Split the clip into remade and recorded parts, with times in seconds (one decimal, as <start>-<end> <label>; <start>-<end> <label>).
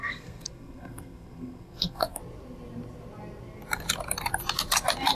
0.0-2.2 remade; 2.2-5.1 recorded